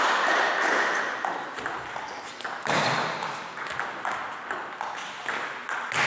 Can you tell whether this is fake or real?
real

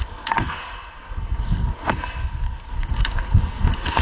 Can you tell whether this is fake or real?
fake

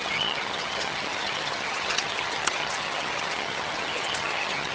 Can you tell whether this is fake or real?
fake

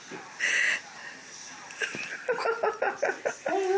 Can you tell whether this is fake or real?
real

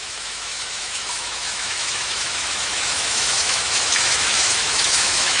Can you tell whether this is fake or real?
fake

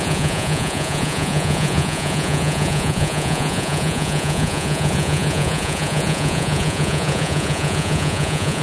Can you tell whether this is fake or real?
fake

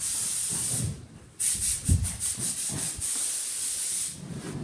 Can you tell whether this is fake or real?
fake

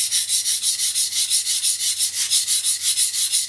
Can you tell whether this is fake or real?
real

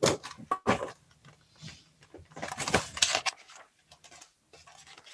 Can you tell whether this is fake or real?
real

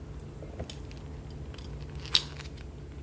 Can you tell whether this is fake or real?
real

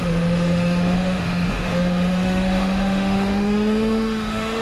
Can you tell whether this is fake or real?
fake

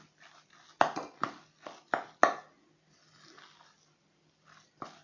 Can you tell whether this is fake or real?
real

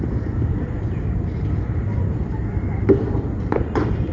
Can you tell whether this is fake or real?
fake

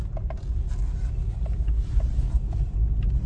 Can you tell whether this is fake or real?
real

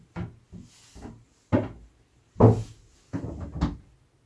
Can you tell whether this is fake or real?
real